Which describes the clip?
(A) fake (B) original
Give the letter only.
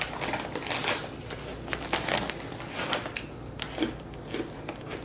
B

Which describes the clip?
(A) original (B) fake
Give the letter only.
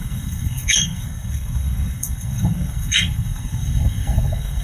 B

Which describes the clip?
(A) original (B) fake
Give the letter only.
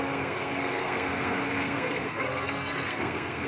B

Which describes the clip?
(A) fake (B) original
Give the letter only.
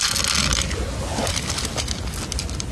B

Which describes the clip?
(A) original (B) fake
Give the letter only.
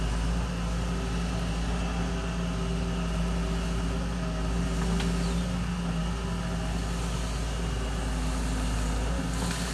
A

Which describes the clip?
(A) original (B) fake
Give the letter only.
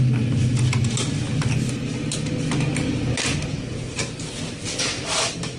A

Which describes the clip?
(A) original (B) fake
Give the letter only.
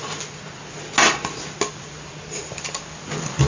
A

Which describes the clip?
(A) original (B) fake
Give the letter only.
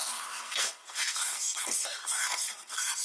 B